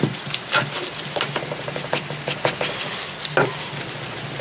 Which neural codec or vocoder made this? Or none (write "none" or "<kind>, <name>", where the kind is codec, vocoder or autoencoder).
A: none